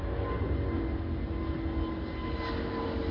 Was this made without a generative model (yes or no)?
yes